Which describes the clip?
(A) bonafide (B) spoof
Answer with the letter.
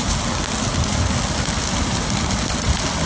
A